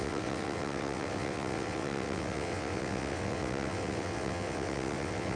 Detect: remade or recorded remade